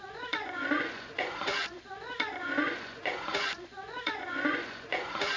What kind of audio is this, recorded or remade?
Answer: remade